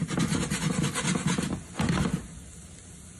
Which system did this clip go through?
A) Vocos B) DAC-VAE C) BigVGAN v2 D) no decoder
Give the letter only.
D